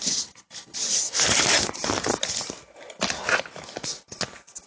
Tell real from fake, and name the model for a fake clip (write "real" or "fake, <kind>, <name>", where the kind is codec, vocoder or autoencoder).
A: real